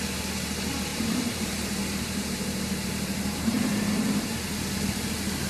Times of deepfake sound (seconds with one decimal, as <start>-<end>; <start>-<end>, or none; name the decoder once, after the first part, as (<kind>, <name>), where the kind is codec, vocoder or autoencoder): 0.9-3.7 (vocoder, BigVGAN v2)